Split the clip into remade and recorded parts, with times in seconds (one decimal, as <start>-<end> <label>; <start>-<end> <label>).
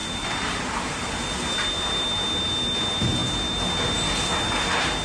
0.0-2.0 remade; 2.0-5.0 recorded